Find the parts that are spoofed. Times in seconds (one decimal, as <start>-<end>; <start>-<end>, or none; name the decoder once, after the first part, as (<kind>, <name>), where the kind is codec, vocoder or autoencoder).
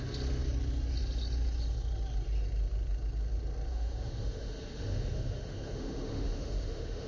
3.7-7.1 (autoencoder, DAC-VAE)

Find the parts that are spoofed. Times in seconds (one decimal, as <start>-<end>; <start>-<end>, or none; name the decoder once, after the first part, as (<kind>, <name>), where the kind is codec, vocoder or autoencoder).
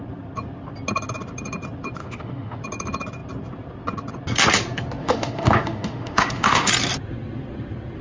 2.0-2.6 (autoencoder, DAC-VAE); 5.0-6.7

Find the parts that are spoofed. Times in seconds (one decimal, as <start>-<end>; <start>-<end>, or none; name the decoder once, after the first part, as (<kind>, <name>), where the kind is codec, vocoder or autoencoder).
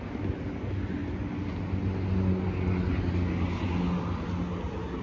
none